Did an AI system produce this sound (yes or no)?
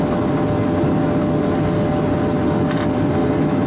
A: no